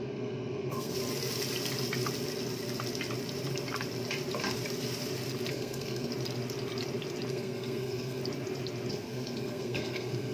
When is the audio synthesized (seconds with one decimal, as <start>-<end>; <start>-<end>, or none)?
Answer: 0.0-1.0; 5.5-6.1; 7.3-8.2; 8.9-10.3

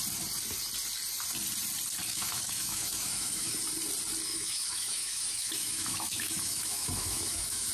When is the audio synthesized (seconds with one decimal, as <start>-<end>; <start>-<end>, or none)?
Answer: 2.1-3.5; 4.3-7.7

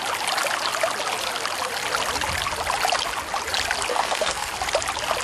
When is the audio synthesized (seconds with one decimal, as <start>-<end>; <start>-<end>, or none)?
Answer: 3.9-4.5